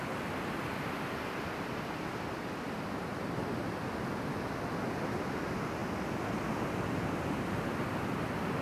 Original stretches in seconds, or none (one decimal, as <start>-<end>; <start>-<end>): 0.0-8.6